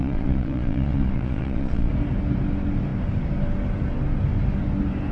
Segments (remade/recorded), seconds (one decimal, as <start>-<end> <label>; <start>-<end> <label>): 0.0-1.9 remade; 1.9-5.1 recorded